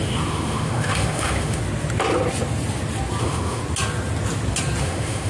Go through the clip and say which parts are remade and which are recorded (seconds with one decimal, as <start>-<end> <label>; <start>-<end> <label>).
0.0-1.6 remade; 1.6-3.2 recorded; 3.2-3.6 remade; 3.6-4.8 recorded; 4.8-5.3 remade